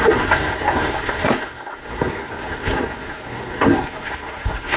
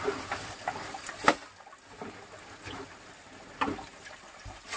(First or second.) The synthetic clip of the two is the first